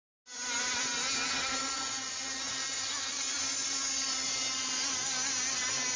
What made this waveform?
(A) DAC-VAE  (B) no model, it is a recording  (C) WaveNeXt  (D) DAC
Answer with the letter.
B